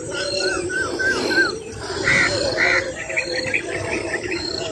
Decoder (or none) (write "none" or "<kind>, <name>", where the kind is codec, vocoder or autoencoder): vocoder, BigVGAN v2